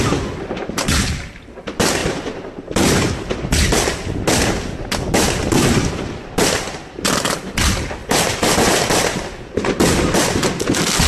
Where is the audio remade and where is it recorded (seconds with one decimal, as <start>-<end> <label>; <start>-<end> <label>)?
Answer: 0.0-0.6 recorded; 0.6-1.3 remade; 1.3-2.0 recorded; 2.0-3.1 remade; 3.1-11.1 recorded